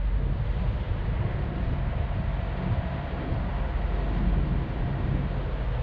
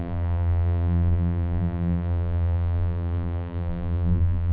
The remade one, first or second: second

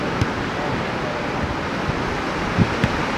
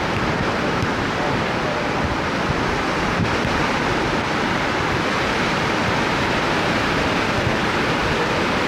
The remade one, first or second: second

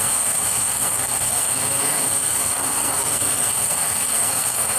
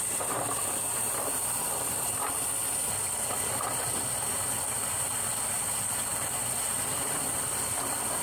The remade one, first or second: first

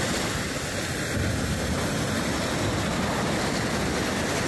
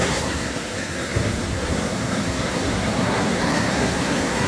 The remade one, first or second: second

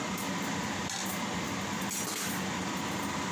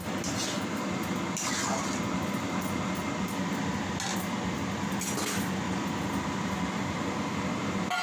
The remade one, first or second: first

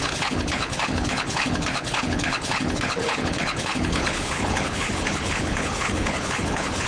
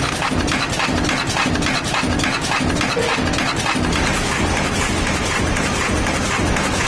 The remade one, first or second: first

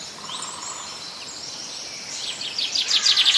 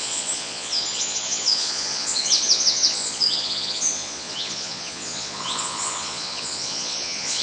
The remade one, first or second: second